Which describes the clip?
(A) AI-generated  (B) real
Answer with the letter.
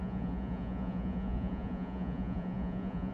A